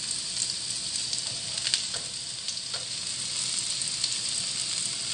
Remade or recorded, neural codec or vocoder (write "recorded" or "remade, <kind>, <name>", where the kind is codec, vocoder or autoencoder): recorded